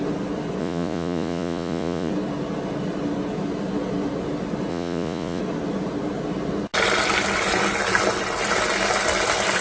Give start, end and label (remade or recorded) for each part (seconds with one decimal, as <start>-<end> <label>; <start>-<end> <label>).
0.0-0.6 recorded; 0.6-2.1 remade; 2.1-4.7 recorded; 4.7-5.4 remade; 5.4-9.6 recorded